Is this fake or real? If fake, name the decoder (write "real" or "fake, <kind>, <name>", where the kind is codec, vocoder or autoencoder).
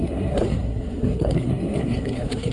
fake, codec, SNAC